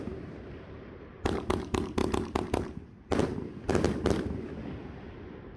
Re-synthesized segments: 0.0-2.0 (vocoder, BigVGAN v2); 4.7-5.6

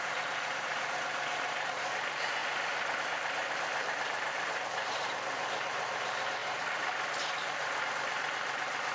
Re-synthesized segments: 0.0-2.4 (vocoder, BigVGAN v2); 3.0-8.9